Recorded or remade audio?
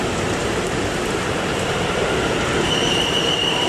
remade